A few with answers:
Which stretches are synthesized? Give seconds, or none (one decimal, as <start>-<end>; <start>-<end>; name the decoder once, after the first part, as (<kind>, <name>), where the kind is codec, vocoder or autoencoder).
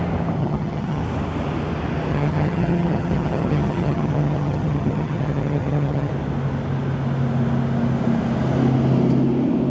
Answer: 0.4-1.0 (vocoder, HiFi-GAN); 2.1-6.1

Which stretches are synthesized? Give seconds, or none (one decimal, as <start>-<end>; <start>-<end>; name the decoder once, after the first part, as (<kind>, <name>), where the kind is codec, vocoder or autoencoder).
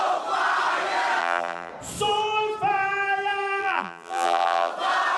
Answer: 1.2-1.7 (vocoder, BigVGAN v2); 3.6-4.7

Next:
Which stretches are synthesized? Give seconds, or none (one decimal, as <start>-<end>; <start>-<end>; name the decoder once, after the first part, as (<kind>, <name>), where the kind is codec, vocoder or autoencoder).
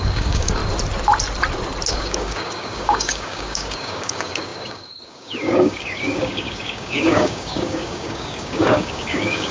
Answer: 0.0-0.6 (codec, DAC); 1.9-9.5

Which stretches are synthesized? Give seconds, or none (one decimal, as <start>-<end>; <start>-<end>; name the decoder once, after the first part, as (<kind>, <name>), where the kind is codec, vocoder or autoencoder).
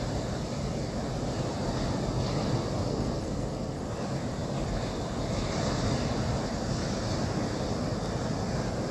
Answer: 2.9-3.8 (codec, SNAC)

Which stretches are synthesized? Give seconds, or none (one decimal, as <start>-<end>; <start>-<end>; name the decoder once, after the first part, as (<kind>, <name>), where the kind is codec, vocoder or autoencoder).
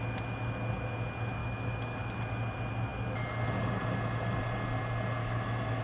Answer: 1.4-2.1 (autoencoder, DAC-VAE); 5.2-5.8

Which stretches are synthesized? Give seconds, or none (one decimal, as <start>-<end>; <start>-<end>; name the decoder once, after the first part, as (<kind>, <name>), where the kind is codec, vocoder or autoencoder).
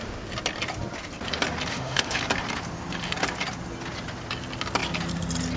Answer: 1.7-2.2 (autoencoder, DAC-VAE)